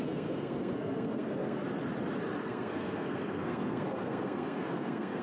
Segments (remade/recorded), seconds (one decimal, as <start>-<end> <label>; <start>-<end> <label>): 0.0-1.6 remade; 1.6-2.4 recorded; 2.4-5.2 remade